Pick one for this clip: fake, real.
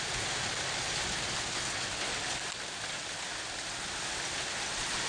real